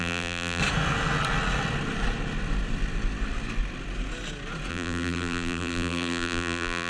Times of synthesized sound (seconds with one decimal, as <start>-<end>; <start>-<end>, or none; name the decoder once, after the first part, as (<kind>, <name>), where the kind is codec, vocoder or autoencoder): 0.0-0.6 (vocoder, BigVGAN v2); 4.7-6.9